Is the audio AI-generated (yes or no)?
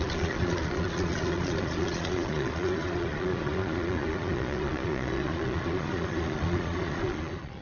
yes